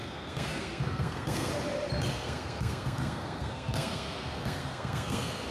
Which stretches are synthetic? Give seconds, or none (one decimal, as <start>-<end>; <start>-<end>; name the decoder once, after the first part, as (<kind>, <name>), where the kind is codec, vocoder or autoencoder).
0.0-1.5 (codec, SNAC); 2.1-5.5